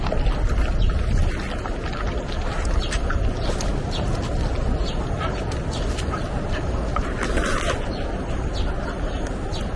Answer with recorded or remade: recorded